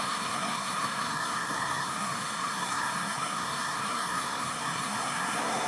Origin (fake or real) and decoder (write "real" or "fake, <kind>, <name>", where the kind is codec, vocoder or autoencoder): fake, codec, SNAC